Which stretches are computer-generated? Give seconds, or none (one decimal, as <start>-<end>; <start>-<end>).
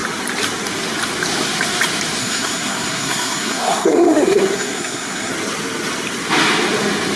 2.2-5.3